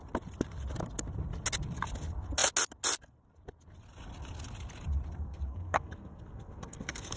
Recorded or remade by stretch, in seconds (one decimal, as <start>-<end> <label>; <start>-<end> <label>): 0.0-5.2 recorded; 5.2-7.2 remade